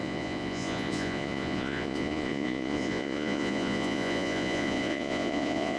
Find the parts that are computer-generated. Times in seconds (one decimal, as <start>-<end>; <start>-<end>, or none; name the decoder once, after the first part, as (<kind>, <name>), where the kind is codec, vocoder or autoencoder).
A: 0.0-5.8 (vocoder, Vocos)